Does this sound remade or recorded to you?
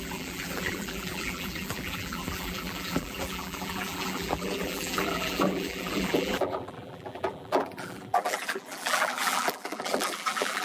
remade